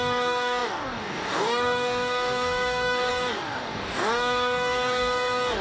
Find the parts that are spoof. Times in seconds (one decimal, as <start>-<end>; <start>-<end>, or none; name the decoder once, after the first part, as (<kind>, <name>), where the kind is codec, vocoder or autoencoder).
0.0-5.6 (codec, DAC)